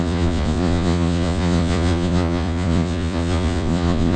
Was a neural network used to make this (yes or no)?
yes